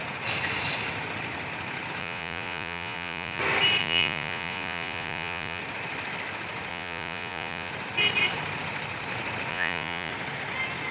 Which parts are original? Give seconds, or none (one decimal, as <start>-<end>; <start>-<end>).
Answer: 0.0-2.0; 3.4-3.8; 5.6-6.7; 7.7-9.5; 10.1-10.9